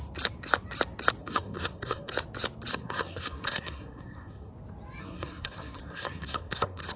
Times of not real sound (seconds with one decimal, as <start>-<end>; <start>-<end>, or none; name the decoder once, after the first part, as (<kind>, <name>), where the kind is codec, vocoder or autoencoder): 1.2-2.1 (codec, SNAC); 2.7-4.5; 5.0-7.0